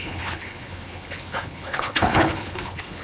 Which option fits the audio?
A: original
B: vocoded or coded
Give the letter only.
B